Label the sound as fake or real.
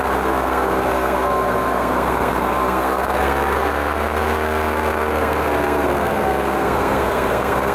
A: fake